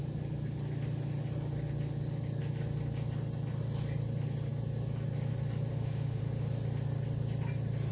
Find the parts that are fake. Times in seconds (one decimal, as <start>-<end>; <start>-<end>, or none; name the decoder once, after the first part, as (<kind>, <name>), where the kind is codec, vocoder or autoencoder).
5.7-6.2 (autoencoder, DAC-VAE)